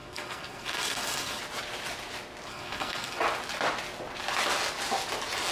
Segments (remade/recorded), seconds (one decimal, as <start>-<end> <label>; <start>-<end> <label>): 0.0-1.4 remade; 1.4-2.5 recorded; 2.5-3.2 remade; 3.2-5.5 recorded